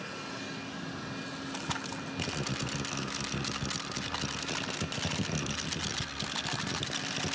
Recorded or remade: recorded